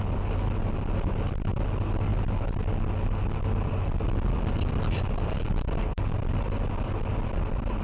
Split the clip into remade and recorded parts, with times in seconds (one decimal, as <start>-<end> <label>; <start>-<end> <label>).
0.0-7.8 recorded